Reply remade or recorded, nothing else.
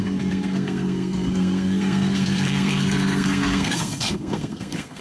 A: remade